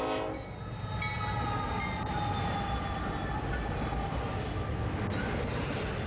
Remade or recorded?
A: recorded